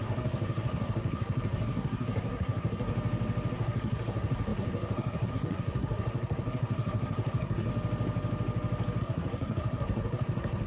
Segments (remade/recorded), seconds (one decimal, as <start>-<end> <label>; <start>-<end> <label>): 0.0-2.9 remade; 2.9-3.5 recorded; 3.5-7.7 remade; 7.7-9.0 recorded; 9.0-10.7 remade